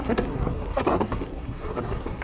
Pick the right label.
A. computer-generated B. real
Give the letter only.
A